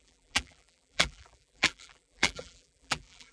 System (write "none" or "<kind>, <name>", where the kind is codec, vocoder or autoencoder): vocoder, BigVGAN v2